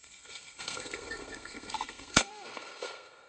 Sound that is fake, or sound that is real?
fake